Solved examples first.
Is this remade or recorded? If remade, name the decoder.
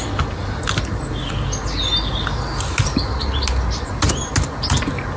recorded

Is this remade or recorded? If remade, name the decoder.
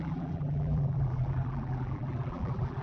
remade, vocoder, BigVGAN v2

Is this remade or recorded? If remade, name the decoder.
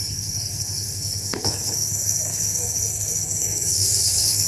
remade, codec, SNAC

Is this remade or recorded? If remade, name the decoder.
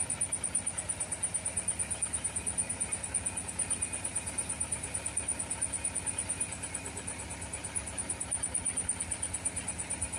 recorded